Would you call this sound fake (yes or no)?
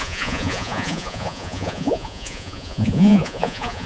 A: yes